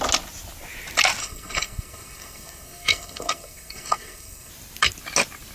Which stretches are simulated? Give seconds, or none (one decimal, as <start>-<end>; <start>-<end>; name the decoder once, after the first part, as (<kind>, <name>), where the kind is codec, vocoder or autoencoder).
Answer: 1.2-4.5 (codec, SNAC)